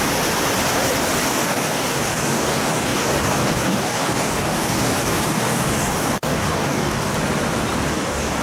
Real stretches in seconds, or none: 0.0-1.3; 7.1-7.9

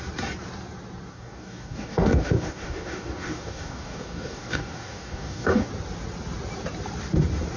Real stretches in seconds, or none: 0.0-1.1; 5.7-7.6

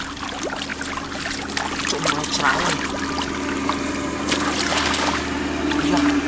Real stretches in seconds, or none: 0.0-4.7; 5.2-6.3

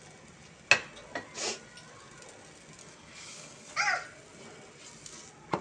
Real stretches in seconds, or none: 0.0-2.8; 3.7-5.6